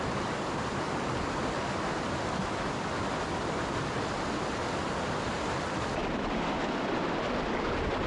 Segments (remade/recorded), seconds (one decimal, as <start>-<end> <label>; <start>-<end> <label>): 0.0-8.1 recorded